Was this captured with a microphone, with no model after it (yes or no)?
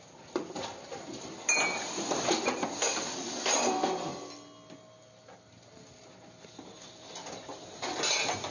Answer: yes